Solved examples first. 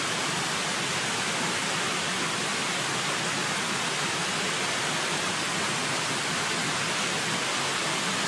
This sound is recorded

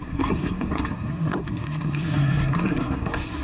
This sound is remade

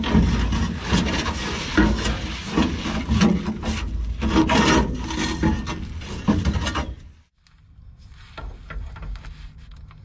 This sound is recorded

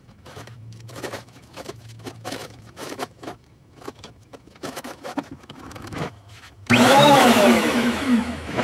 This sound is remade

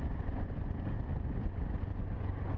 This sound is remade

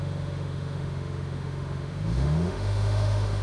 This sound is remade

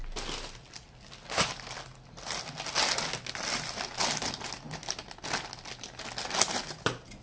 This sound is recorded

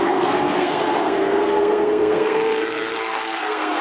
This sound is remade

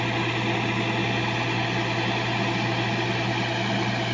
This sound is recorded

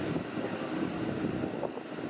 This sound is recorded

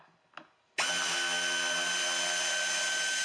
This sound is recorded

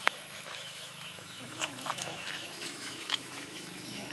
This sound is remade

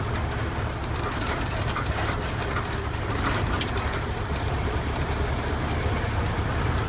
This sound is recorded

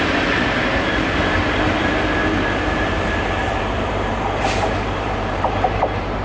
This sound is remade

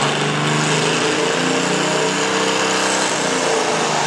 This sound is recorded